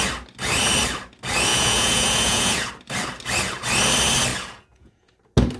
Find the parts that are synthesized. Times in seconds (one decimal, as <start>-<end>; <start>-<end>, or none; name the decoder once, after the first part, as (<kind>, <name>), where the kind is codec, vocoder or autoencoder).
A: 1.5-2.7 (vocoder, Vocos); 4.3-5.1